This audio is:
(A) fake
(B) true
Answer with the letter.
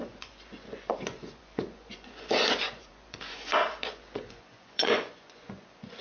A